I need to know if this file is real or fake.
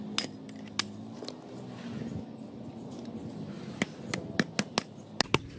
real